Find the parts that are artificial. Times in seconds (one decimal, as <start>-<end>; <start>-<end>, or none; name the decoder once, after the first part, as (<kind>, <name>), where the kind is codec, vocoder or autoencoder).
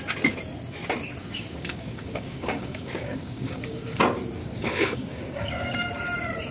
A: 1.2-4.0 (codec, DAC); 4.4-5.9